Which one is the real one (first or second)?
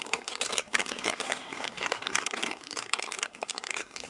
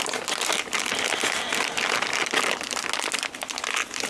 second